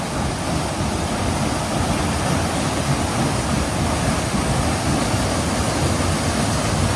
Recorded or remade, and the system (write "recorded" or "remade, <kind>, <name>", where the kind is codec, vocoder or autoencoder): recorded